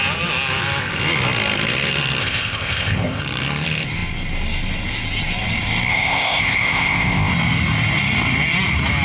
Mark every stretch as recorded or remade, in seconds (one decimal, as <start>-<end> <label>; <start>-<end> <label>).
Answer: 0.0-2.2 recorded; 2.2-3.2 remade; 3.2-5.9 recorded; 5.9-7.3 remade; 7.3-9.0 recorded